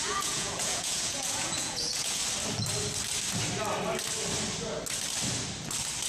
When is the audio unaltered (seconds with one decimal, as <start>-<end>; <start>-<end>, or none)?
2.2-6.1